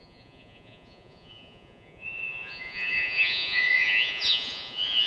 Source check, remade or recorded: remade